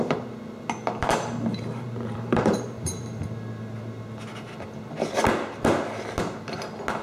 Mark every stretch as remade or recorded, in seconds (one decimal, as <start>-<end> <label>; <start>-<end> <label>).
0.0-1.0 recorded; 1.0-3.2 remade; 3.2-7.0 recorded